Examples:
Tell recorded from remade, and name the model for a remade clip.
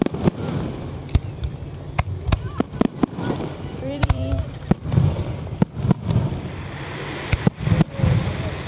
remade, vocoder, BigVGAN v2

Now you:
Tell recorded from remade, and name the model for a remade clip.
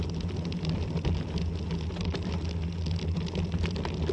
recorded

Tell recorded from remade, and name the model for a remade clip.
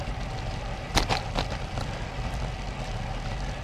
recorded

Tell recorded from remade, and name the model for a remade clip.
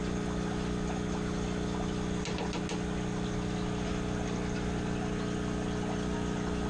recorded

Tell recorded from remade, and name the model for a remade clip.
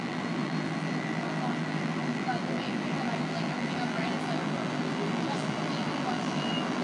remade, vocoder, BigVGAN v2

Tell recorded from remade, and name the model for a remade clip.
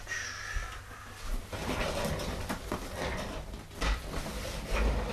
recorded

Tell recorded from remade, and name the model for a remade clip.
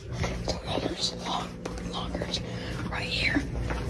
recorded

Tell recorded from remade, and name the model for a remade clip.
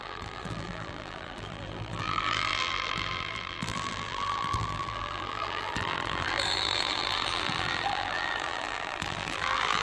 remade, vocoder, BigVGAN v2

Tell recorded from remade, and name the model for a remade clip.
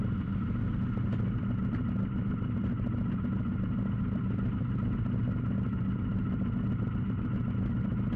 recorded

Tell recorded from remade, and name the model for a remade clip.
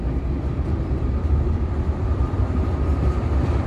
remade, vocoder, BigVGAN v2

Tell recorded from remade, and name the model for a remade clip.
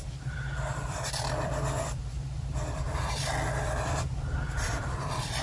remade, vocoder, BigVGAN v2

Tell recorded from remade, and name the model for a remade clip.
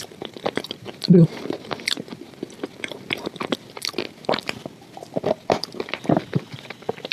remade, vocoder, BigVGAN v2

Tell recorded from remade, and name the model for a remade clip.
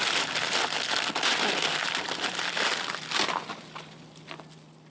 recorded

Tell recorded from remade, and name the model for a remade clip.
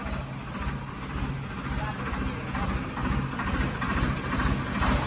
recorded